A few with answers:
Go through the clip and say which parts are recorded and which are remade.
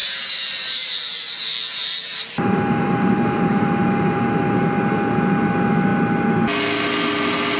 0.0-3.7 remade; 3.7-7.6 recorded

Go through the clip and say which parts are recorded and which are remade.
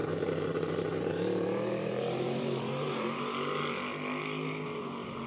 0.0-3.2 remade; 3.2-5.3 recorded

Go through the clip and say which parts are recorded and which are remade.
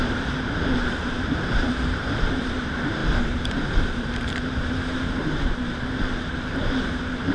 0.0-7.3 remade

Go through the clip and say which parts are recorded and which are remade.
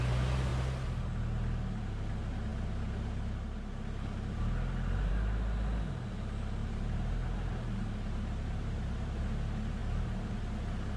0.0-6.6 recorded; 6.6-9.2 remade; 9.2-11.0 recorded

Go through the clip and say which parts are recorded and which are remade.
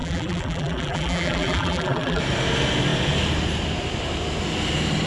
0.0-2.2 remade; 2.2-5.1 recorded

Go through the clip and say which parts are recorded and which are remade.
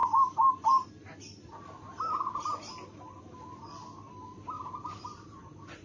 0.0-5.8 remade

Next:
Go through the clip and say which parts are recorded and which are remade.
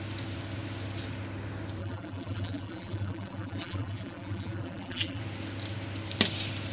0.0-1.8 recorded; 1.8-5.2 remade; 5.2-6.7 recorded